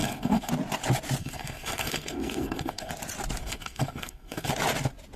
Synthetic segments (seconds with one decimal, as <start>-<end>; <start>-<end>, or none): 0.0-0.5; 1.2-2.9; 3.4-4.5